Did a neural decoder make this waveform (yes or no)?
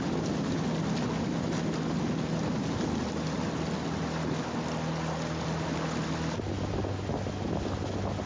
no